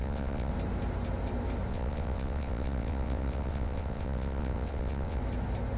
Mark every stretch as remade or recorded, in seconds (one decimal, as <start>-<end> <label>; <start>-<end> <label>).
0.0-0.5 remade; 0.5-1.7 recorded; 1.7-5.2 remade; 5.2-5.8 recorded